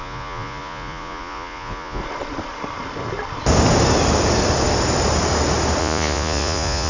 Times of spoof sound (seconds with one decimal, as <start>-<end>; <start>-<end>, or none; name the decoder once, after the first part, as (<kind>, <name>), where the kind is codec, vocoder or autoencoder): 0.0-2.0 (vocoder, Vocos); 5.8-6.9